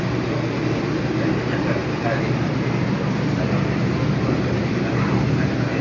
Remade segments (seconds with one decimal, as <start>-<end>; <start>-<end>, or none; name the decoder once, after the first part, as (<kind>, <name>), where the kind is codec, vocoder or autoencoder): 1.8-5.3 (vocoder, BigVGAN v2)